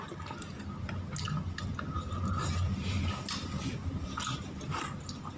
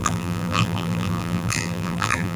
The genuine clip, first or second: first